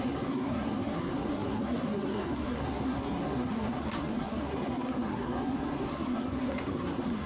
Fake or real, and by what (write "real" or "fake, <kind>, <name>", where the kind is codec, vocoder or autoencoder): fake, codec, SNAC